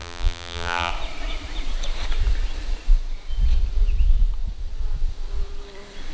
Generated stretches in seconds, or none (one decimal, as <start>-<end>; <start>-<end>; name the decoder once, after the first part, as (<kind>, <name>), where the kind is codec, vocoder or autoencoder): 0.0-0.9 (vocoder, BigVGAN v2)